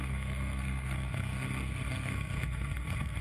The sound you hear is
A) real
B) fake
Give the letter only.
B